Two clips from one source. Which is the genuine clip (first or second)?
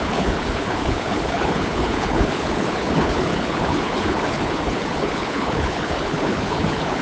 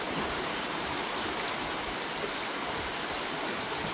second